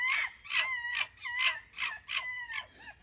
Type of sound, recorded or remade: recorded